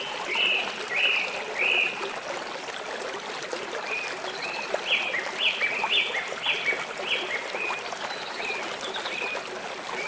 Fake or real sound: real